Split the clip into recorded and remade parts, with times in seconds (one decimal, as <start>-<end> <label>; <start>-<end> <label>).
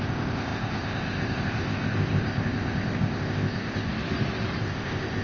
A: 0.0-3.9 remade; 3.9-4.6 recorded; 4.6-5.2 remade